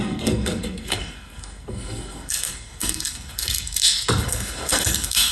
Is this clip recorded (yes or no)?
no